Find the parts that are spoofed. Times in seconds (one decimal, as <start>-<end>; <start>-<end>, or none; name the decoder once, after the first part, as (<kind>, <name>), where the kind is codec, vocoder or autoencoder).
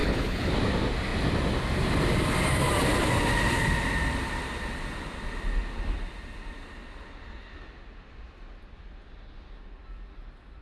0.0-0.5 (codec, HILCodec)